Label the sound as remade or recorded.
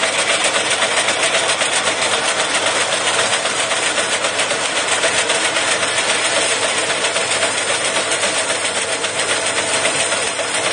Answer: recorded